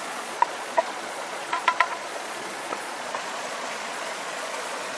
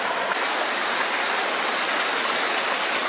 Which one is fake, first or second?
first